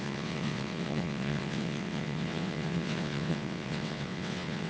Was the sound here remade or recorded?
remade